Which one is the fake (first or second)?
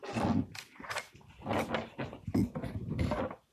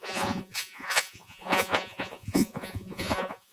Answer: second